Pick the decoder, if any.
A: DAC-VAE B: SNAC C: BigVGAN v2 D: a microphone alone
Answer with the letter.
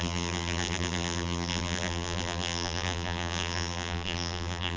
C